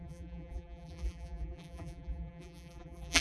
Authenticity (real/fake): fake